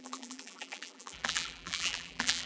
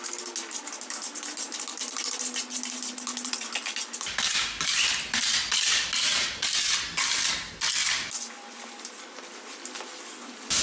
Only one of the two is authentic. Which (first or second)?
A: second